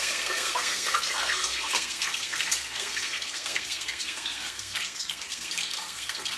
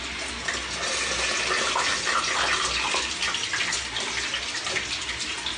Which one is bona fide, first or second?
second